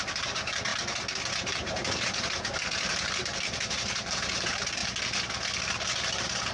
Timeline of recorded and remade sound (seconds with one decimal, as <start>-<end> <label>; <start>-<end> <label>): 0.0-0.7 remade; 0.7-1.3 recorded; 1.3-4.8 remade; 4.8-5.6 recorded; 5.6-6.5 remade